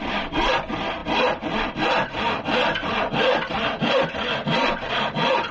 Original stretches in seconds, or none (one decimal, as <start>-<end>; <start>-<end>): 0.0-5.5